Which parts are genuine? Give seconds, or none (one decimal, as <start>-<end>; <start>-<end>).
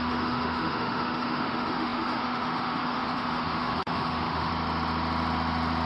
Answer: 4.5-5.9